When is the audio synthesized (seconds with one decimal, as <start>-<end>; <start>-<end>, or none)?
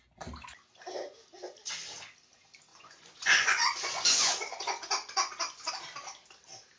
2.7-5.7